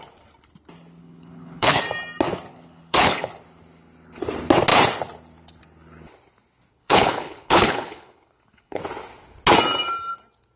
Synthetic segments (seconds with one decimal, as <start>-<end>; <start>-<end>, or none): 1.0-1.8; 2.5-3.3; 6.8-8.8